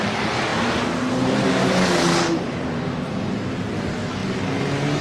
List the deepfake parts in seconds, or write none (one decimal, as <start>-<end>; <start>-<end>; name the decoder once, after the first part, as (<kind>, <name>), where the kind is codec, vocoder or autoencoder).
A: none